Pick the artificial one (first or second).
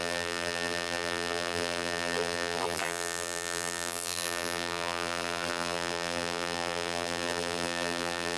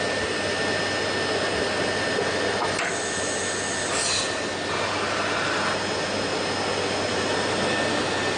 first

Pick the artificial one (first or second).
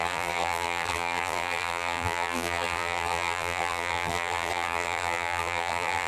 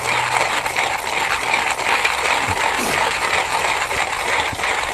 first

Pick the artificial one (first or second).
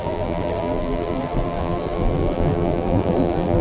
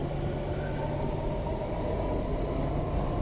first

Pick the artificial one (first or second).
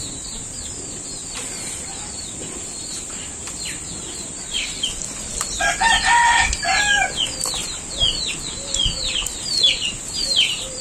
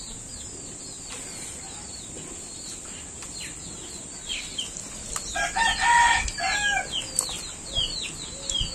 first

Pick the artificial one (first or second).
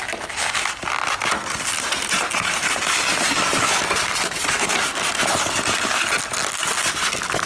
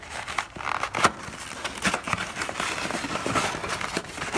second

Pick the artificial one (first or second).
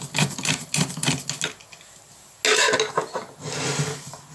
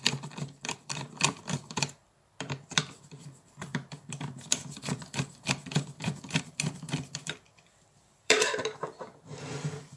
second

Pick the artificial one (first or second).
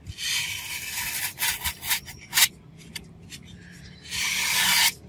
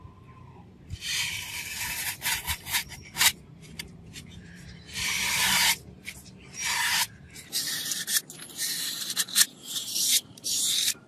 second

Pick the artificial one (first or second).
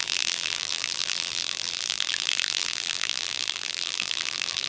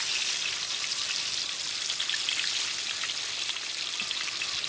first